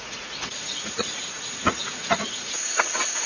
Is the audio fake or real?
fake